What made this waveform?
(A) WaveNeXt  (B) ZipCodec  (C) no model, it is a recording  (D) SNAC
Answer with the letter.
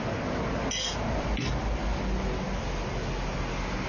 C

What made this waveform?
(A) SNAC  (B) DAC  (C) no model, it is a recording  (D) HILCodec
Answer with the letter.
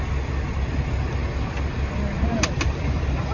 C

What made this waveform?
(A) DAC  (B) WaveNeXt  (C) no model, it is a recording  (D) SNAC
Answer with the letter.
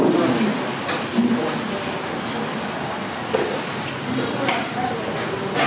C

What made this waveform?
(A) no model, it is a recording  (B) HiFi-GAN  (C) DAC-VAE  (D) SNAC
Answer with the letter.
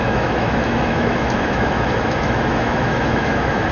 C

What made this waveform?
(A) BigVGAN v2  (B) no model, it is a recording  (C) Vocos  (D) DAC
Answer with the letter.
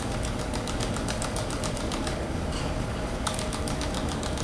D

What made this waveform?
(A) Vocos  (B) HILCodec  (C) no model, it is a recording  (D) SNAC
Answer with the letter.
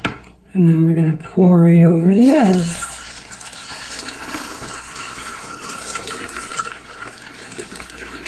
D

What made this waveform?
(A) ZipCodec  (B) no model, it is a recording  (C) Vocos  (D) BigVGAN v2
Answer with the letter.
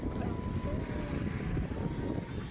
B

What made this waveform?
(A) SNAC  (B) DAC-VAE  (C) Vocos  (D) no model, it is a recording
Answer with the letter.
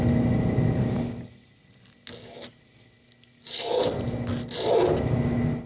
D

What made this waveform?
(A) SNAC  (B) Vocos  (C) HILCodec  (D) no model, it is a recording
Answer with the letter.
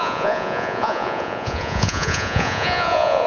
B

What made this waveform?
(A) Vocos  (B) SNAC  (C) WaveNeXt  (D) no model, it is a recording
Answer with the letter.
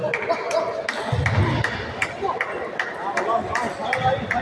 D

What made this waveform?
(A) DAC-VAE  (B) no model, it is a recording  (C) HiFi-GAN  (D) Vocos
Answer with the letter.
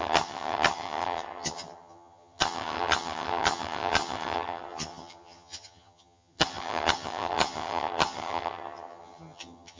C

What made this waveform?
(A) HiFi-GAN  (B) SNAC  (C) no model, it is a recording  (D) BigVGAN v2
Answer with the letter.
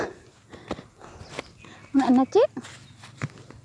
C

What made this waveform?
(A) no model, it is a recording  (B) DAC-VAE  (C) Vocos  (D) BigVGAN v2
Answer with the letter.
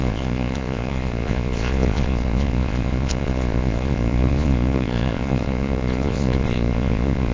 C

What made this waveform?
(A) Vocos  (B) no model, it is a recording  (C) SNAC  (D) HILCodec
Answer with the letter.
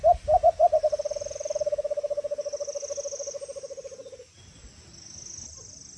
B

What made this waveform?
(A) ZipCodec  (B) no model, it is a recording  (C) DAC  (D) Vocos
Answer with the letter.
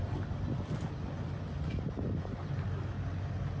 B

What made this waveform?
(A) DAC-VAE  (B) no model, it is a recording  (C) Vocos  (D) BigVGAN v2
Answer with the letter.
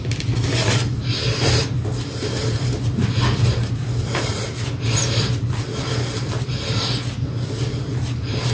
D